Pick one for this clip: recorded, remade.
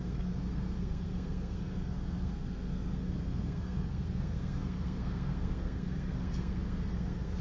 remade